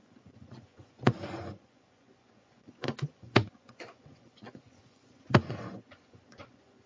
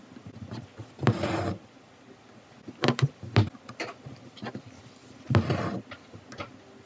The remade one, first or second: first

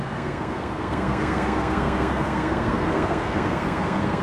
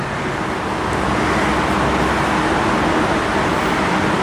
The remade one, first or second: first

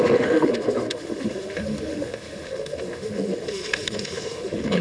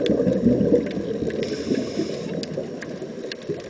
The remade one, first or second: first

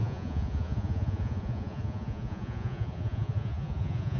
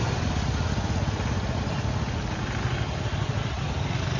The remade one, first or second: first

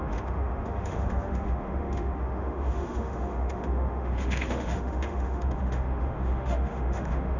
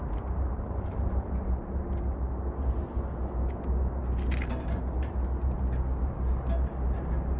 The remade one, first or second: first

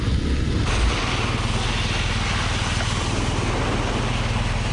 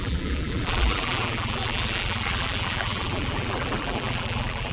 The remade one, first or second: second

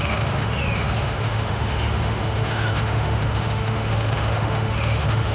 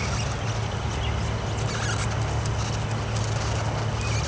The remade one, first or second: first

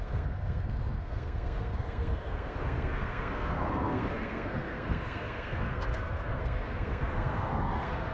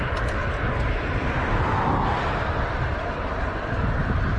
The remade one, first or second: first